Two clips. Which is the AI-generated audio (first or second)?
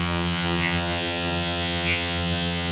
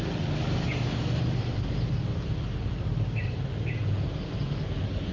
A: first